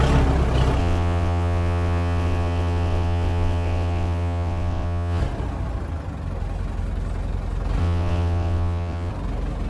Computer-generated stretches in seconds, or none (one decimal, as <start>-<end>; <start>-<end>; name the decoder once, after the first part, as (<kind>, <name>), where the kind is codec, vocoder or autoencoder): 0.8-5.2 (vocoder, WaveNeXt); 7.8-9.1